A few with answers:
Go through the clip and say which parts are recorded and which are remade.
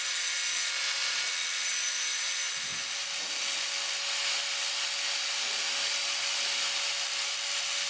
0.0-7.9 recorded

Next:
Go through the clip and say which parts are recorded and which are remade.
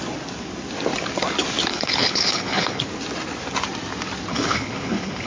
0.0-1.7 recorded; 1.7-2.8 remade; 2.8-4.3 recorded; 4.3-5.3 remade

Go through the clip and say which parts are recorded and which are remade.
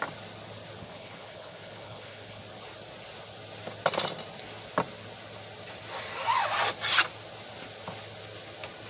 0.0-0.8 recorded; 0.8-2.4 remade; 2.4-8.9 recorded